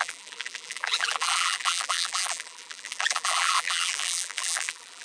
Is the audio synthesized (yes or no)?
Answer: yes